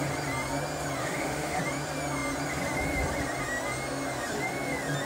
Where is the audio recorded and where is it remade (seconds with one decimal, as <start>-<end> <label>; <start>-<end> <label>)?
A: 0.0-1.0 recorded; 1.0-1.6 remade; 1.6-5.1 recorded